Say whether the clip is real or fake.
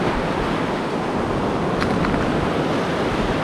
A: real